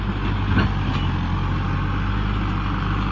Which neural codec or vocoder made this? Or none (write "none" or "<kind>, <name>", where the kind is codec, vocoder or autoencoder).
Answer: none